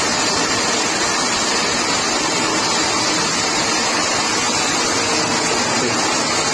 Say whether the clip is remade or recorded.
recorded